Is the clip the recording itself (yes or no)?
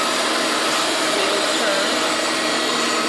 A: no